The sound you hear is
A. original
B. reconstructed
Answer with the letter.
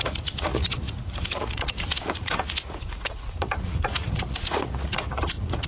B